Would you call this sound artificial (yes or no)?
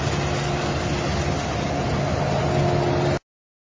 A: no